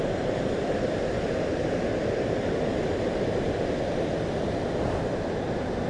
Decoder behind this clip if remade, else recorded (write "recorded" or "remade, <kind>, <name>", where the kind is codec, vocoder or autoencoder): recorded